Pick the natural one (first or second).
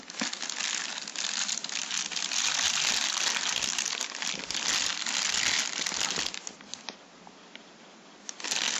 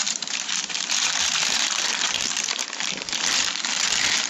first